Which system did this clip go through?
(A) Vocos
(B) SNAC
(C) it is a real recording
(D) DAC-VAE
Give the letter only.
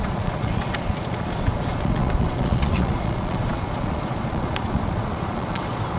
A